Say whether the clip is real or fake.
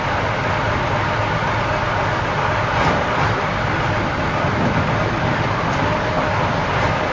real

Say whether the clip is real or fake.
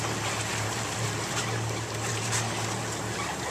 real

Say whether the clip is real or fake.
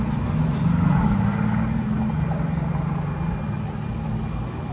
real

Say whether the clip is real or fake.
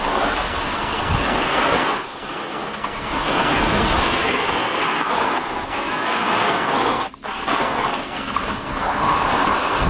fake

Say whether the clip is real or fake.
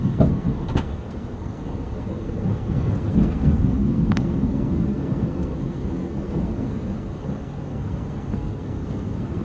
fake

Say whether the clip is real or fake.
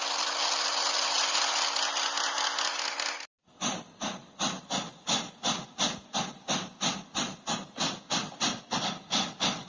real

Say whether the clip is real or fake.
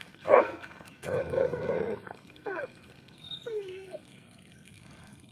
fake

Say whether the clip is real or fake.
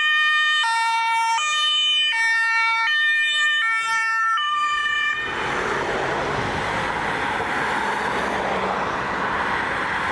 real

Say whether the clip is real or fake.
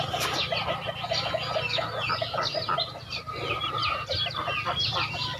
real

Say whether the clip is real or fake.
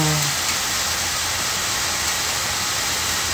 real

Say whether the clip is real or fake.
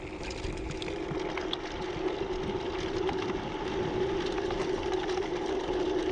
real